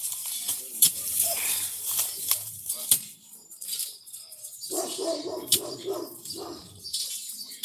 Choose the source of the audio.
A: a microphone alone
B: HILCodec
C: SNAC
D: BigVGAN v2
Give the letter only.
D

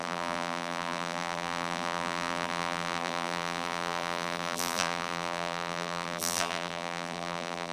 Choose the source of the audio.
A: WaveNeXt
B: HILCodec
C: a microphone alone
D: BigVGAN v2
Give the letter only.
D